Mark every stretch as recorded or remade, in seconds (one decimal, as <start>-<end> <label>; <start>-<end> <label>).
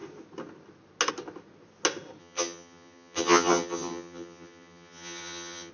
0.0-2.2 recorded; 2.2-5.7 remade